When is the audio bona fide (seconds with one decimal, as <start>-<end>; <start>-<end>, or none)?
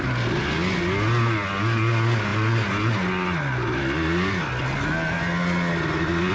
0.0-6.3